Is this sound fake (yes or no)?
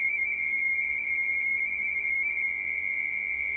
yes